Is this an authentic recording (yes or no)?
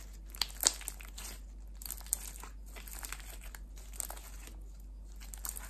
yes